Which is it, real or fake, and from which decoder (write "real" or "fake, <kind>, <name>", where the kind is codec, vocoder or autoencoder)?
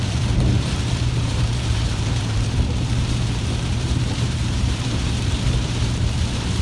fake, vocoder, BigVGAN v2